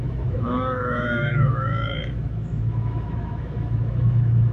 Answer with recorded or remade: remade